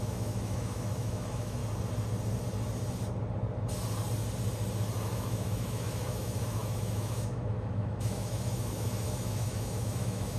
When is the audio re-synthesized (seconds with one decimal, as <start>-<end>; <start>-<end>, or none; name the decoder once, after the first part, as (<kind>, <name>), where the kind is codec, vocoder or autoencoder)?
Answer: 0.0-1.6 (autoencoder, DAC-VAE); 5.0-10.4